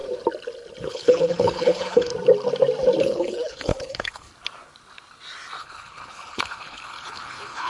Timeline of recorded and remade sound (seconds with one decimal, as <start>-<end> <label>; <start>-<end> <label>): 0.0-0.8 recorded; 0.8-2.1 remade; 2.1-3.0 recorded; 3.0-4.3 remade; 4.3-5.6 recorded; 5.6-7.7 remade